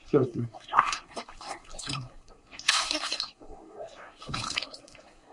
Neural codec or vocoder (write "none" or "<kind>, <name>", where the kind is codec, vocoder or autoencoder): codec, SNAC